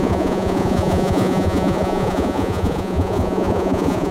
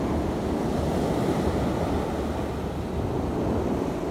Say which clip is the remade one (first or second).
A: first